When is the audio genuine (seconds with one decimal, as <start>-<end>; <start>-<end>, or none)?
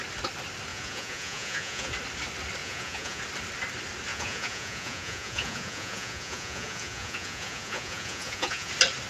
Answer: 0.0-0.7; 1.9-2.6; 3.2-4.1; 8.7-9.1